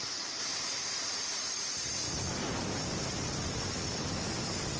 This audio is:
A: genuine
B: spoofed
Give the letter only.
A